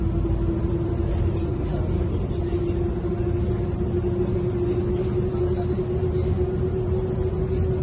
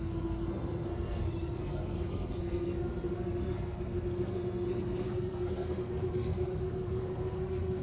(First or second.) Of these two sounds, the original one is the first